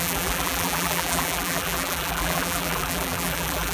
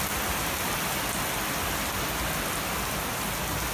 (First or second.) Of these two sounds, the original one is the second